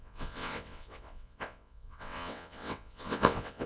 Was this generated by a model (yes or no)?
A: yes